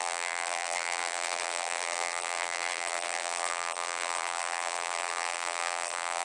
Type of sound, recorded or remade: remade